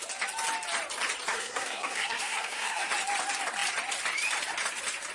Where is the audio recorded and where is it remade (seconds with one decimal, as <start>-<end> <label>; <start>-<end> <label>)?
0.0-1.3 recorded; 1.3-2.9 remade; 2.9-5.1 recorded